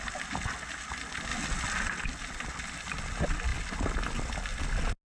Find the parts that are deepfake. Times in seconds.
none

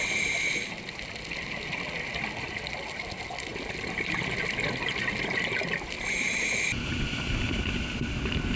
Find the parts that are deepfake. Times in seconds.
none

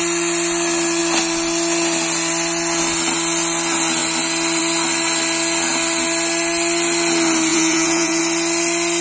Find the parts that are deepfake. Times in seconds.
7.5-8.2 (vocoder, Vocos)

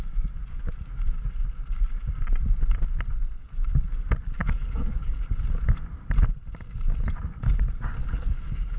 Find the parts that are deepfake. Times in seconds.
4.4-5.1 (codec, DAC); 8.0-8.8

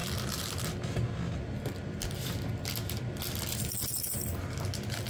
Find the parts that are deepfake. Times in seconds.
none

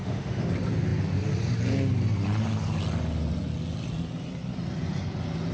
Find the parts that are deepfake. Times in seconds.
0.0-0.5 (autoencoder, DAC-VAE)

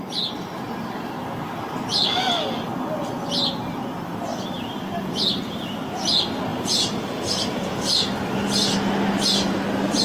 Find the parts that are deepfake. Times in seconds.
4.3-5.7 (vocoder, BigVGAN v2); 6.5-8.0

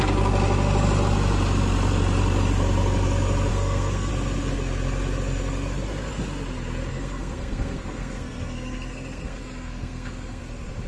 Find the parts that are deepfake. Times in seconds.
3.5-4.1 (codec, SNAC); 6.9-10.4